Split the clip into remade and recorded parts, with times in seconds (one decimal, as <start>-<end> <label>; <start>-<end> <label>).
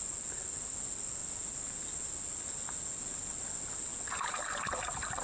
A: 0.0-5.2 recorded